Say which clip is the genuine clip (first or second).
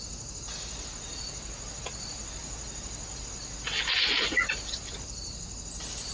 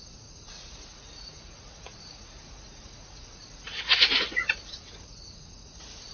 first